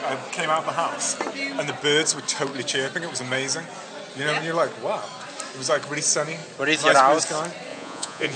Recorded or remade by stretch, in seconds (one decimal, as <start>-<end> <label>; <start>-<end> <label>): 0.0-7.7 recorded; 7.7-8.4 remade